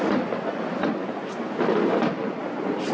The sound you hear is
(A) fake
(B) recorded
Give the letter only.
B